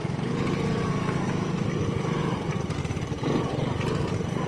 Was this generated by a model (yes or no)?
no